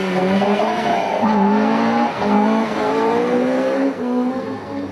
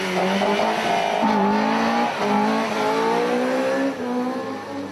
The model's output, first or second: first